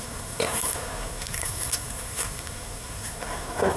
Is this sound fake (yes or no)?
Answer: yes